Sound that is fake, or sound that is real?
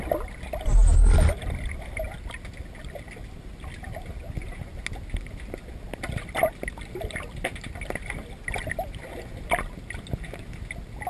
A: real